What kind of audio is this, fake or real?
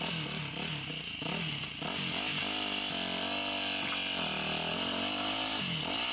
real